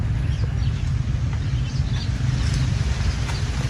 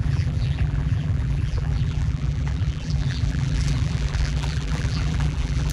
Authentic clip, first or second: first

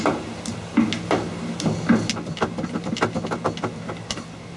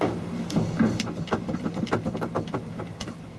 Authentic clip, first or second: first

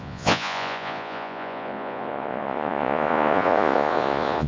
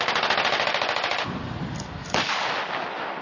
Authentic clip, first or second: second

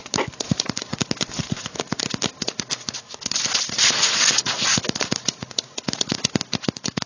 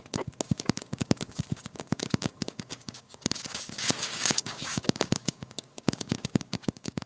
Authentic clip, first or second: first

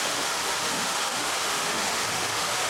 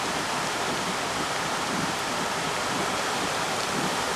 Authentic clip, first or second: second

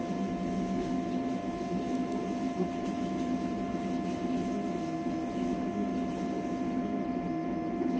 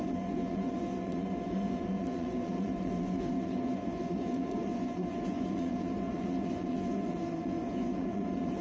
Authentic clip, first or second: first